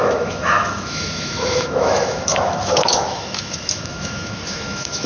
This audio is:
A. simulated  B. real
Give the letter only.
A